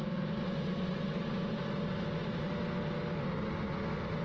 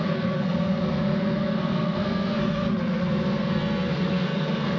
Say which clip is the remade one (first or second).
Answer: second